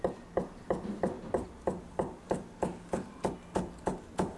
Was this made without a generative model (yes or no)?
yes